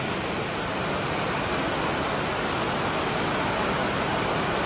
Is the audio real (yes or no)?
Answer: yes